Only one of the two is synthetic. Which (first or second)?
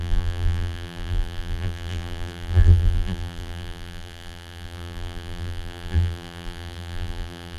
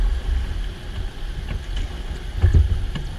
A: first